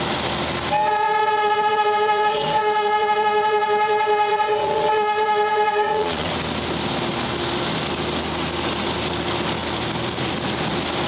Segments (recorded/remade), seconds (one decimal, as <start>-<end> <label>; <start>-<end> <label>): 0.0-1.2 recorded; 1.2-6.3 remade; 6.3-11.1 recorded